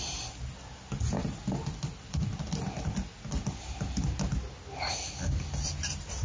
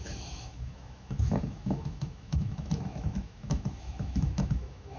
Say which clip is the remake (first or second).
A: second